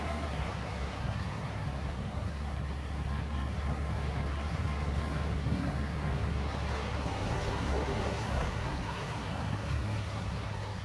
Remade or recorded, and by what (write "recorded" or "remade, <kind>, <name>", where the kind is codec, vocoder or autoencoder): remade, codec, SNAC